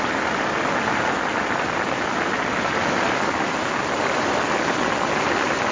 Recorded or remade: recorded